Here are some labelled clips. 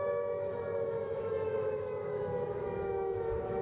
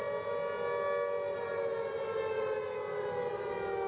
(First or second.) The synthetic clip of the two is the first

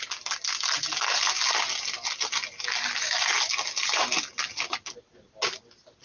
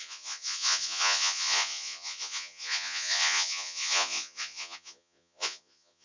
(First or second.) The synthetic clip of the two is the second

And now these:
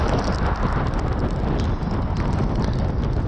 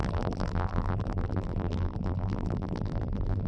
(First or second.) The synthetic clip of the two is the second